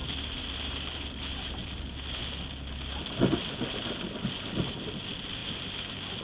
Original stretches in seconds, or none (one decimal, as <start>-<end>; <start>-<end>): 0.0-6.2